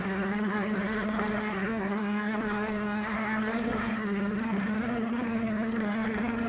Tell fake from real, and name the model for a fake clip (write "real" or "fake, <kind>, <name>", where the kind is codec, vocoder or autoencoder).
fake, codec, SNAC